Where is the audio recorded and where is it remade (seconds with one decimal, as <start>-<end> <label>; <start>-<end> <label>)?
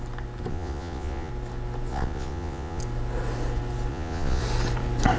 0.0-0.5 recorded; 0.5-1.3 remade; 1.3-1.9 recorded; 1.9-2.8 remade; 2.8-3.9 recorded; 3.9-4.4 remade; 4.4-5.2 recorded